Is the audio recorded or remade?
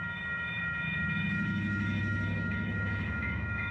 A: remade